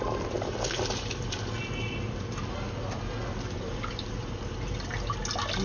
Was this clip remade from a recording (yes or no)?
no